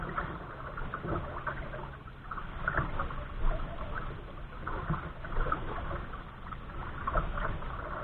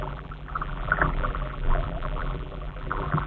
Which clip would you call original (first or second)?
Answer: first